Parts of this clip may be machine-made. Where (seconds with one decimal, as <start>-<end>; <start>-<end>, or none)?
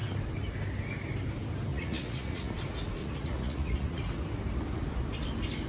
1.7-2.5; 3.0-4.0